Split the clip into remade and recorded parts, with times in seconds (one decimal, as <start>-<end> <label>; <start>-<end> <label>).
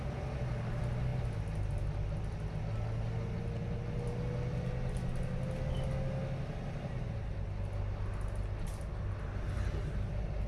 0.0-10.5 recorded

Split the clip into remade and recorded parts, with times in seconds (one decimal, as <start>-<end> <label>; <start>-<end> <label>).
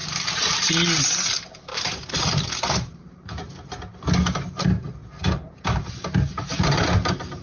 0.0-0.7 remade; 0.7-1.7 recorded; 1.7-3.4 remade; 3.4-7.4 recorded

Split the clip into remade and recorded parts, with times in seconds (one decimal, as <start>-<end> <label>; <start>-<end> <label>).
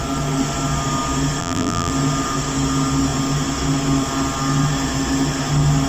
0.0-1.4 recorded; 1.4-1.9 remade; 1.9-5.9 recorded